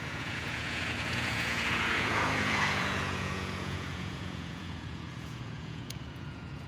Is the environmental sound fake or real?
fake